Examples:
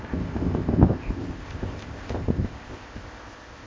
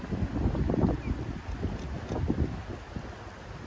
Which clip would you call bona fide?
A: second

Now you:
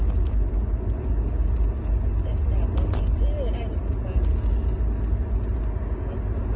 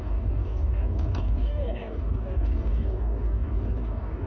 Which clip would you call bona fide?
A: first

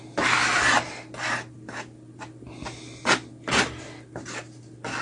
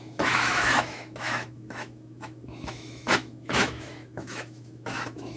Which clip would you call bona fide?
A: first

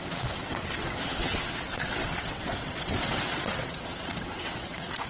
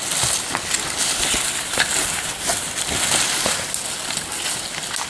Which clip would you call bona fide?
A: second